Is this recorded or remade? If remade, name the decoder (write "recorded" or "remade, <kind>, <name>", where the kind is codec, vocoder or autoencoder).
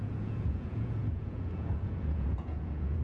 remade, vocoder, Vocos